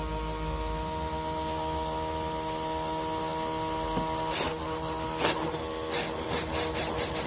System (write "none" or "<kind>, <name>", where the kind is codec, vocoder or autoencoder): none